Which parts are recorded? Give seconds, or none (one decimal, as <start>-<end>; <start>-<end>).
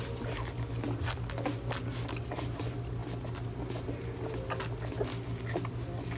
0.0-6.2